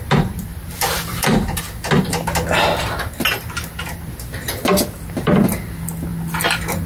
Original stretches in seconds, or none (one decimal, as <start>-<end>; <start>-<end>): 0.0-0.5; 1.6-6.9